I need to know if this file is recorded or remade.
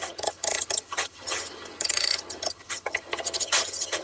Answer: remade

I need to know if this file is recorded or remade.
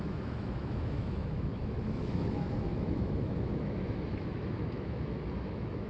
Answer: remade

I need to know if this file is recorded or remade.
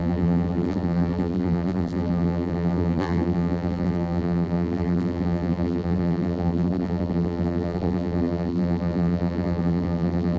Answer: remade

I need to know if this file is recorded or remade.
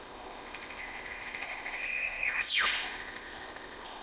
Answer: remade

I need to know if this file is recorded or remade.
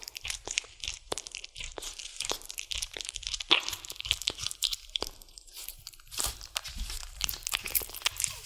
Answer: remade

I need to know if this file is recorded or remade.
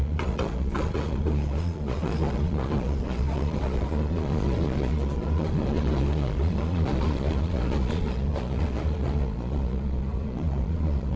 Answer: remade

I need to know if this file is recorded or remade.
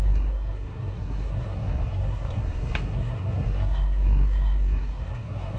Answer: remade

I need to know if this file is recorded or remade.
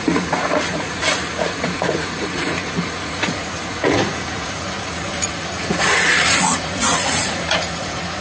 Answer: remade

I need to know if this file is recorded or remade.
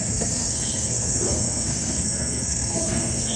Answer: remade